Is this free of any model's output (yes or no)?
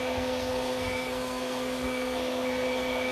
no